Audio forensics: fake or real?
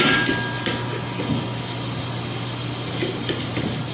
real